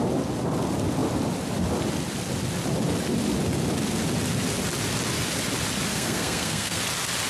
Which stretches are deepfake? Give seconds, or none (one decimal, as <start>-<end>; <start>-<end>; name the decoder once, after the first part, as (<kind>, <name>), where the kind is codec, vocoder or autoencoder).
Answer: 5.9-6.8 (codec, SNAC)